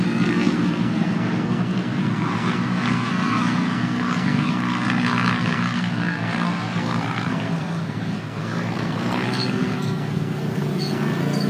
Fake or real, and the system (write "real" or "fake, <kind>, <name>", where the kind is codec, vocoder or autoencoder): fake, codec, SNAC